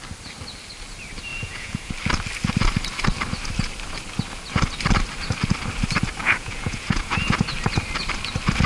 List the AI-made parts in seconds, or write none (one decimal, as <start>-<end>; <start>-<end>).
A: 1.3-1.9; 6.2-7.2